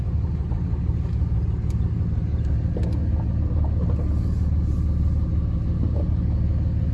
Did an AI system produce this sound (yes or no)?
no